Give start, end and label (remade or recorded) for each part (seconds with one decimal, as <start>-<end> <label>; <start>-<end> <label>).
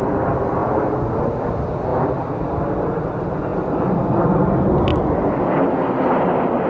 0.0-1.9 recorded; 1.9-2.6 remade; 2.6-3.5 recorded; 3.5-4.2 remade; 4.2-6.7 recorded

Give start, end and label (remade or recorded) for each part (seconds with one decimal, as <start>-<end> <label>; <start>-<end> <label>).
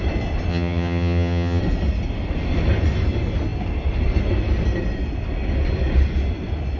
0.0-0.5 recorded; 0.5-1.6 remade; 1.6-6.8 recorded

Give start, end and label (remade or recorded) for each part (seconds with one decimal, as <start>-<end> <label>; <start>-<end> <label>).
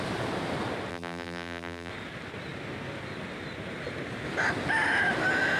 0.0-0.9 recorded; 0.9-1.9 remade; 1.9-5.6 recorded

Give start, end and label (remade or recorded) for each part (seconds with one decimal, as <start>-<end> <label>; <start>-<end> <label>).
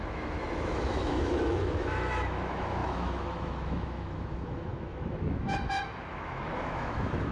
0.0-7.3 remade